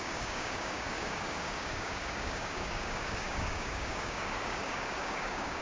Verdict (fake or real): fake